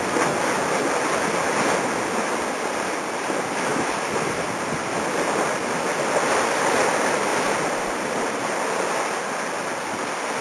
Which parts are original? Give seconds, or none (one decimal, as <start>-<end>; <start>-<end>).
0.0-3.7; 4.4-7.3; 8.5-10.4

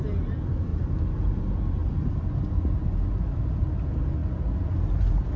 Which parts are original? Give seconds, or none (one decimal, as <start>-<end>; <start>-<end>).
0.0-0.7; 1.4-5.4

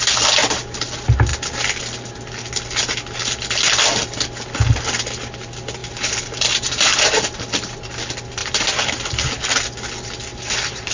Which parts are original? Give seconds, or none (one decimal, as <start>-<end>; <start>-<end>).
0.0-5.8; 7.5-8.4; 9.3-10.3